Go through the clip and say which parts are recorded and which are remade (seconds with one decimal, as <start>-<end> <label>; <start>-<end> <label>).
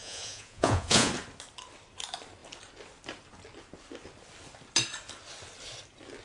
0.0-1.1 remade; 1.1-6.2 recorded